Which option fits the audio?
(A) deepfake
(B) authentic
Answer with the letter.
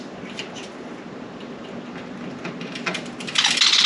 B